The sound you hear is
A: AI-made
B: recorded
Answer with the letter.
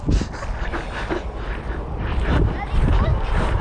B